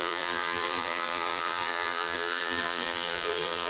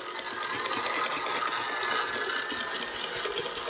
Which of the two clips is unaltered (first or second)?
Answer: second